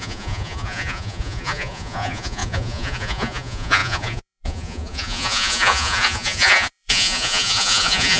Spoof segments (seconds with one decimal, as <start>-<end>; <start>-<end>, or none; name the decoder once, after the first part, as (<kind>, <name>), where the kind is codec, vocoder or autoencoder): 0.0-8.2 (vocoder, Vocos)